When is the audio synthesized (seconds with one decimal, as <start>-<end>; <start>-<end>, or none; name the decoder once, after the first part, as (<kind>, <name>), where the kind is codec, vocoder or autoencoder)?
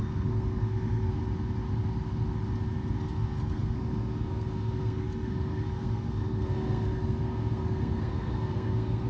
0.0-1.2 (codec, SNAC); 2.9-9.1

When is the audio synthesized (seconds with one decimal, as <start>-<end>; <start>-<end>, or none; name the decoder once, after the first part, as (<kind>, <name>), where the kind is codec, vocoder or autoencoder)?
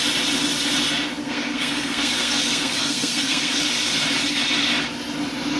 1.2-3.6 (codec, SNAC)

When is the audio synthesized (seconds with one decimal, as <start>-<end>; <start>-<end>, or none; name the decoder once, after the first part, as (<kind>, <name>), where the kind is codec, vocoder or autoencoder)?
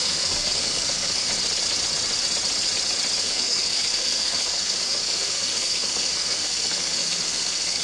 0.0-1.3 (codec, SNAC); 3.2-7.8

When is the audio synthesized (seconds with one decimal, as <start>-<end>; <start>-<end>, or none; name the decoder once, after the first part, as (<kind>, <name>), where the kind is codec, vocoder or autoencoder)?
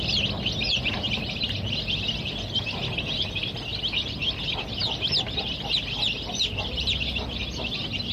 none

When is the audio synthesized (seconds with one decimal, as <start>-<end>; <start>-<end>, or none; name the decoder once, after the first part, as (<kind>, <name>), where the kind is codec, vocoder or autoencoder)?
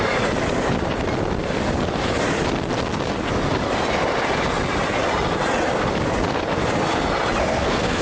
7.4-8.0 (codec, SNAC)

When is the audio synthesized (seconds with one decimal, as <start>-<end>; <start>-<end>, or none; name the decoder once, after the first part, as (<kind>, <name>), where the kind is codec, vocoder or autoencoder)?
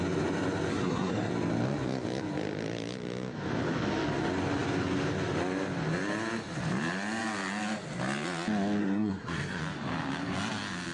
0.7-1.3 (codec, SNAC); 8.8-9.6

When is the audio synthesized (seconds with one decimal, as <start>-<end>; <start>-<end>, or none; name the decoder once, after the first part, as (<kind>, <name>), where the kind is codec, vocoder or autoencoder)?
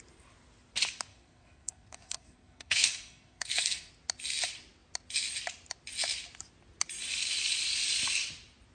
1.1-3.9 (codec, SNAC)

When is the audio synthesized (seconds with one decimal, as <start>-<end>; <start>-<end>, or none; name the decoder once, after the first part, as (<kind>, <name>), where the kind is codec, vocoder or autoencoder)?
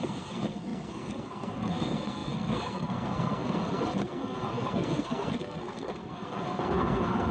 0.0-7.3 (codec, SNAC)